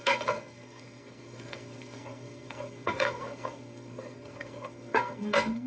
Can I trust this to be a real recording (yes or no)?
no